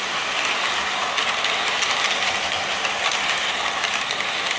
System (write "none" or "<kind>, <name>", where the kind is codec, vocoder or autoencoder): none